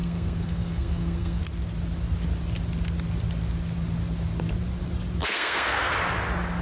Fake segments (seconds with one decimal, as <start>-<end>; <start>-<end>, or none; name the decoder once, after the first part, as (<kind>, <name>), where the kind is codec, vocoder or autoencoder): 0.0-1.4 (codec, SNAC); 5.2-5.9